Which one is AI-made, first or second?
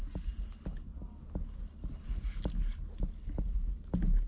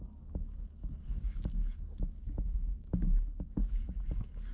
second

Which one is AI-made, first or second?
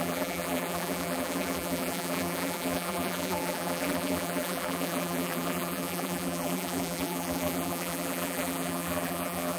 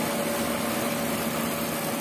first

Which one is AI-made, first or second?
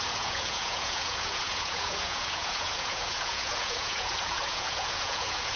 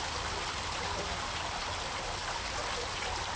first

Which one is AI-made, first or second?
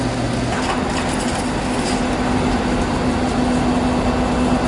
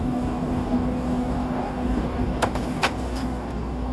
second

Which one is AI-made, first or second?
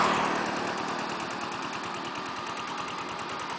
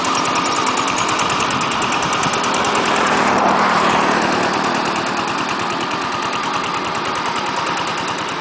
second